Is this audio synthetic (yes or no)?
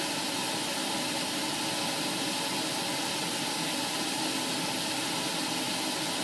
no